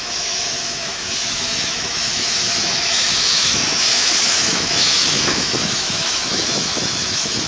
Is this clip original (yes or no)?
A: no